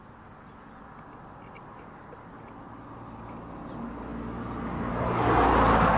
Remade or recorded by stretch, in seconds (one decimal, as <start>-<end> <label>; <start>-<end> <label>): 0.0-6.0 recorded